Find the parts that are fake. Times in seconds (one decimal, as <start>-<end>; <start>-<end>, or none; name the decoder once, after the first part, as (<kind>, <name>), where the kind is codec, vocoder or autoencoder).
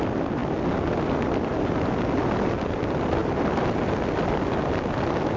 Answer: none